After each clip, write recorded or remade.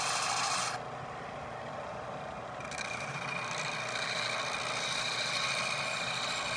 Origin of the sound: recorded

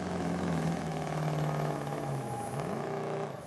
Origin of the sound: remade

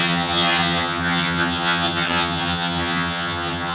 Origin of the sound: remade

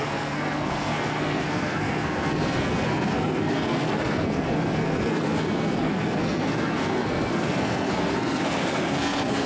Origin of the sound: remade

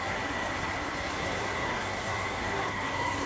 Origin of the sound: remade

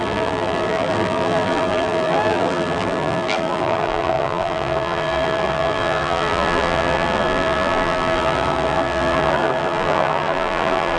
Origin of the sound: remade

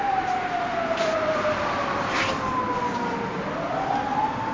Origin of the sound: recorded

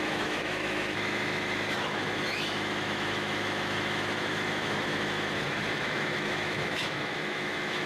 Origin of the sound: remade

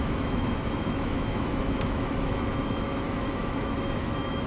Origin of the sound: remade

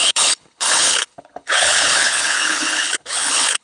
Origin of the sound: remade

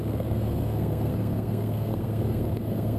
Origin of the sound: remade